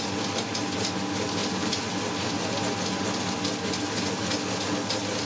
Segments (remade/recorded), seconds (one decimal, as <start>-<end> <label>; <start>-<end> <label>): 0.0-5.3 recorded